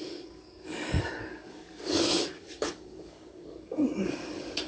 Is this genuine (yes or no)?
no